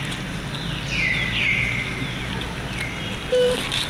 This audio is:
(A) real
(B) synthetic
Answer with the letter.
A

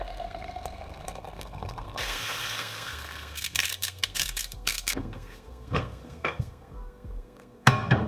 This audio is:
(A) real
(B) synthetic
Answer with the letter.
B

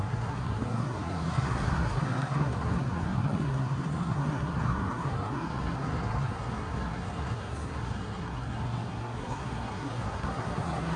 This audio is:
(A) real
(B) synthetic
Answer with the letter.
B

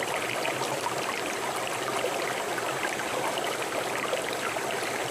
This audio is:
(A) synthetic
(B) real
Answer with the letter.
B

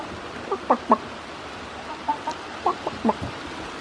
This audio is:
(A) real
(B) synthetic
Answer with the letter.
A